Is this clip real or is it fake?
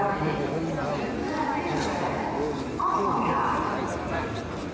real